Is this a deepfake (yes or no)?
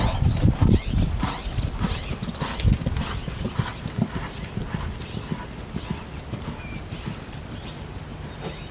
no